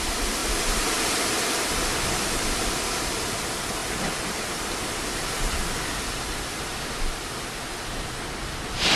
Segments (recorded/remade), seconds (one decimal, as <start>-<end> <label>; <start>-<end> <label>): 0.0-9.0 recorded